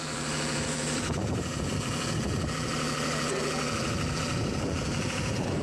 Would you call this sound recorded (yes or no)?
no